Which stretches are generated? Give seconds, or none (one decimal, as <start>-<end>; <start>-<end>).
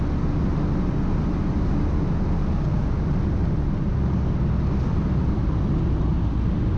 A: none